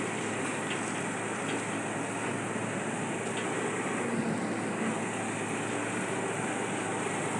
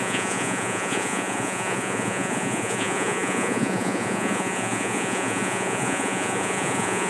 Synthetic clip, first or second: second